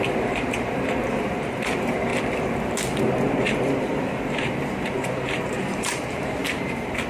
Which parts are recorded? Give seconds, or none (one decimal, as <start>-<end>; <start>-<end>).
2.1-3.0; 6.4-7.1